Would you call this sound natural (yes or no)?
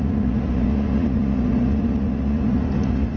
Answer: no